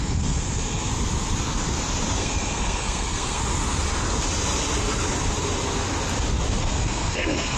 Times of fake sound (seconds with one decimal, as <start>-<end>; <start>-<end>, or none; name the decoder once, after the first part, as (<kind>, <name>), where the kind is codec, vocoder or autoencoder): 0.0-0.9 (codec, SNAC); 2.2-3.4; 6.6-7.6